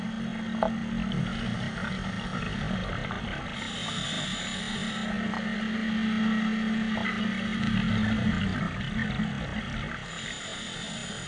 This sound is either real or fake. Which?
real